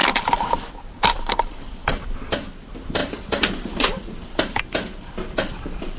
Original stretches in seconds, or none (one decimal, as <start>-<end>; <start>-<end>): 0.0-3.0; 4.6-6.0